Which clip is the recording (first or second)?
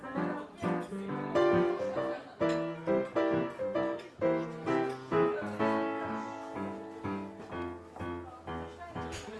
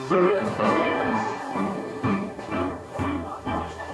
first